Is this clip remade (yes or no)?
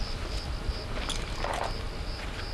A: no